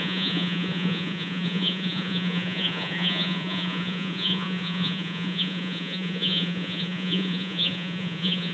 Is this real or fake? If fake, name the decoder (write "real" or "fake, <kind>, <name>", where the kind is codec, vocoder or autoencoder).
fake, vocoder, Vocos